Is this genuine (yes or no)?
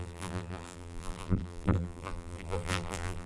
no